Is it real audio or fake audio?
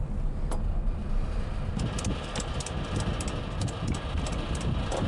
real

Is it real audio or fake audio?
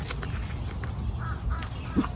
real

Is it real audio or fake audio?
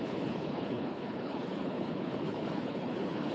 fake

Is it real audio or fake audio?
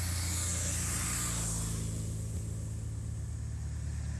real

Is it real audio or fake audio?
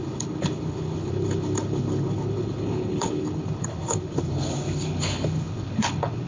fake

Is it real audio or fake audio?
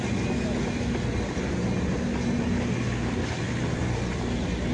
real